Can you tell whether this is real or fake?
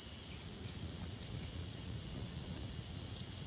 fake